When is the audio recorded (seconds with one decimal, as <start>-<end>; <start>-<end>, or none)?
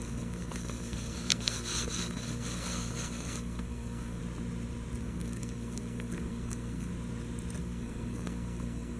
4.2-5.0; 6.9-7.6